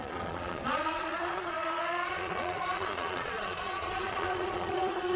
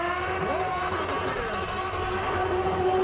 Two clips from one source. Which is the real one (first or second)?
second